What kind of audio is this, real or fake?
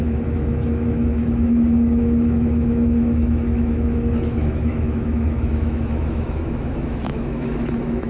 fake